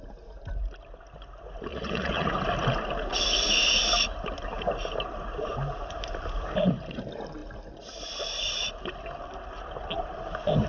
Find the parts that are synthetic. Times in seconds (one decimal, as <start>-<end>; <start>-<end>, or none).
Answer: 1.7-2.3